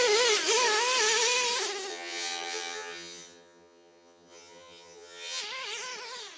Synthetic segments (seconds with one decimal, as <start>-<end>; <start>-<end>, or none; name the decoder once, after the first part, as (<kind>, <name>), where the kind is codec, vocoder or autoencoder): 1.9-5.4 (vocoder, HiFi-GAN)